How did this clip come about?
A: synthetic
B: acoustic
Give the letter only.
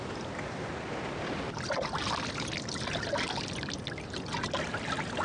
B